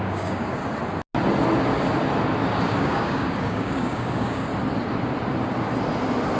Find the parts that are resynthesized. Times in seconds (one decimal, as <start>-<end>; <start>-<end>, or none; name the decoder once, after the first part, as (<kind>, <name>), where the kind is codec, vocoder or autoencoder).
0.0-0.6 (codec, DAC); 2.7-4.5